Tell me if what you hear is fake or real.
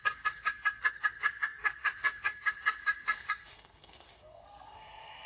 fake